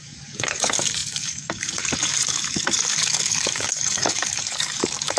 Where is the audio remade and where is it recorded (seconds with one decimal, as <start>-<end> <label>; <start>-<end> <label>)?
0.0-5.2 remade